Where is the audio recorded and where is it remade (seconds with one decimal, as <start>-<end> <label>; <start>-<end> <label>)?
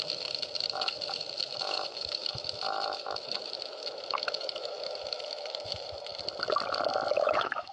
0.0-6.1 remade; 6.1-7.1 recorded; 7.1-7.7 remade